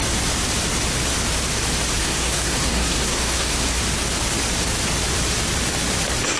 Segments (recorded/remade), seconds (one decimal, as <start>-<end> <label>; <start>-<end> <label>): 0.0-2.0 recorded; 2.0-3.8 remade; 3.8-6.4 recorded